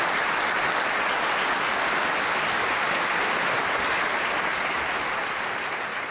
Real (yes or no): yes